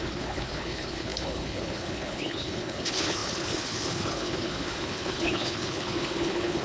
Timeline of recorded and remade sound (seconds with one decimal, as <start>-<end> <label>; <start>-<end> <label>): 0.0-6.6 remade